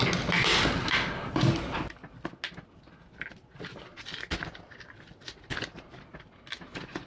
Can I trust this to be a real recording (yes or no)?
yes